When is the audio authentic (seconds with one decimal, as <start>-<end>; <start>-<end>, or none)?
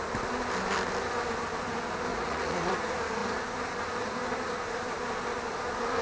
0.0-2.1; 2.7-6.0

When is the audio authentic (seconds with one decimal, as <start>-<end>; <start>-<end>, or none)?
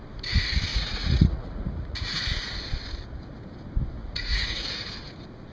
0.0-0.7; 2.2-4.0; 4.8-5.5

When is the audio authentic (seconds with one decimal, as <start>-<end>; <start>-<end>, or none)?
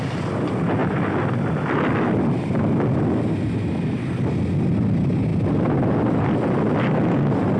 0.0-7.6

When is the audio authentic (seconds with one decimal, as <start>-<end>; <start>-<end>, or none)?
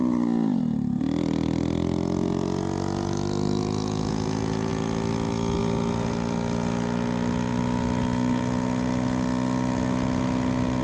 0.0-10.8